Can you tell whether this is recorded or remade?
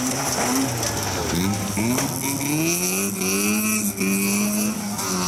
recorded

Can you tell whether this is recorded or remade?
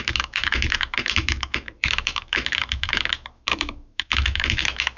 remade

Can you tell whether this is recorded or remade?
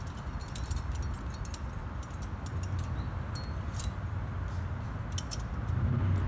recorded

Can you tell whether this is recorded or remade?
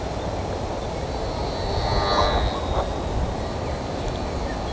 recorded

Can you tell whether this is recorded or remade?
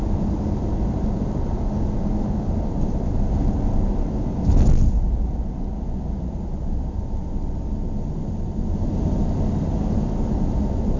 recorded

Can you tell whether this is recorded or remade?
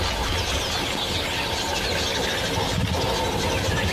recorded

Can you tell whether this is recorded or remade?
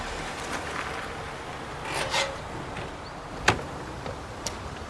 recorded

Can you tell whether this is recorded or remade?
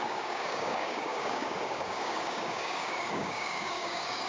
remade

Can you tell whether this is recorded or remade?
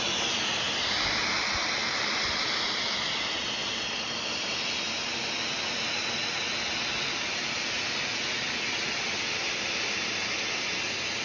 recorded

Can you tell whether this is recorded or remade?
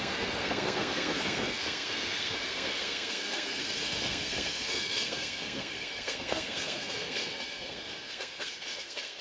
remade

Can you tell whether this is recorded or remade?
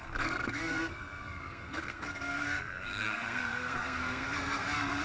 remade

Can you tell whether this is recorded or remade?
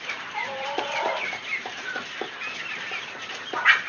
remade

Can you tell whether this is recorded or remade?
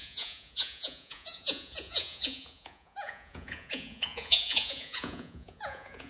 remade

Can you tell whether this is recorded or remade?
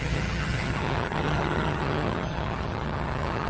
remade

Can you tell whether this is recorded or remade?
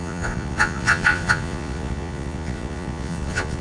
remade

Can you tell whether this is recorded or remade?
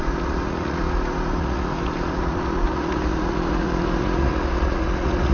remade